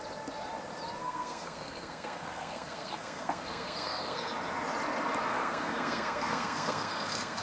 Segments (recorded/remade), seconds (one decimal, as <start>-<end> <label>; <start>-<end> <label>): 0.0-1.0 recorded; 1.0-4.3 remade; 4.3-5.3 recorded; 5.3-7.4 remade